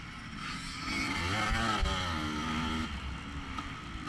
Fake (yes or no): no